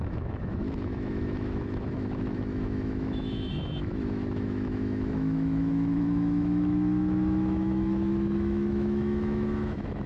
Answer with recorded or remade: remade